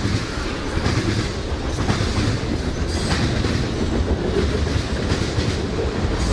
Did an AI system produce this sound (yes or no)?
no